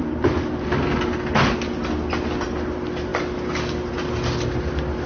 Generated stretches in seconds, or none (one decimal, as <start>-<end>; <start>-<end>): none